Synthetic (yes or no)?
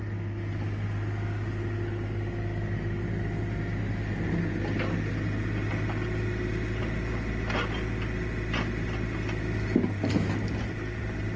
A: no